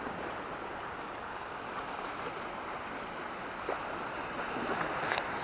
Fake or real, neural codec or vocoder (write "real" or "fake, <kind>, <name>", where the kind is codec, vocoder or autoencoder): real